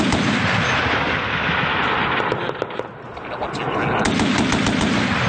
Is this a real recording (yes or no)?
yes